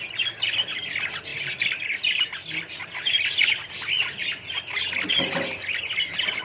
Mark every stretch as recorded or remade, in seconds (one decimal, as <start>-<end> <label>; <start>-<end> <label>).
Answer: 0.0-6.4 recorded